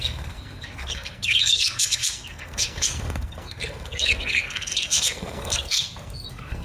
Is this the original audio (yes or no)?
no